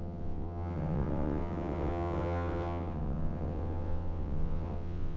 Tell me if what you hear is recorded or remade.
remade